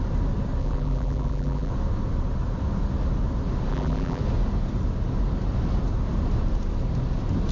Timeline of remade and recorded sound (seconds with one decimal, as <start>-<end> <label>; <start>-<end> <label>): 0.0-0.6 recorded; 0.6-1.7 remade; 1.7-3.7 recorded; 3.7-4.2 remade; 4.2-7.5 recorded